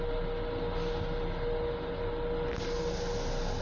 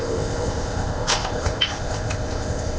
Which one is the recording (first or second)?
first